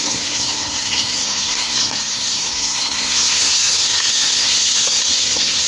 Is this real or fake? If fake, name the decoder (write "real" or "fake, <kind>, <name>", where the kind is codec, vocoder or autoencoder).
fake, codec, SNAC